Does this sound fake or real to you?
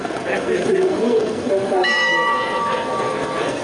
fake